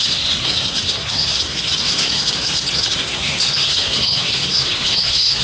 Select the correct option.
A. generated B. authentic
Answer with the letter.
A